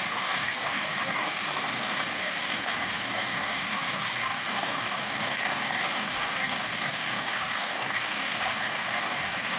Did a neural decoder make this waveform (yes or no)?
yes